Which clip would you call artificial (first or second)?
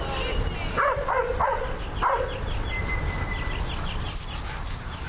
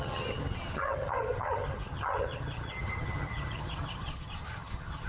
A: second